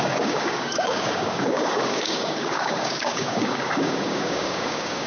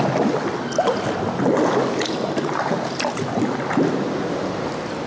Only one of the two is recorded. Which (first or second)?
second